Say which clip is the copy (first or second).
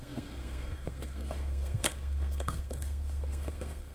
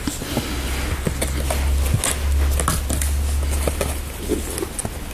first